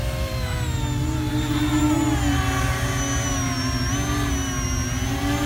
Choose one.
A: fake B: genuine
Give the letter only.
B